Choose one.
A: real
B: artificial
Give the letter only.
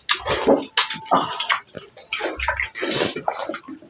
A